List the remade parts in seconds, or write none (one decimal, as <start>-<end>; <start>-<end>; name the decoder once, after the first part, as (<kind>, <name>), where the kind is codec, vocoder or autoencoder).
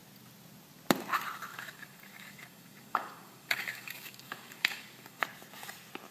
1.5-5.2 (codec, DAC)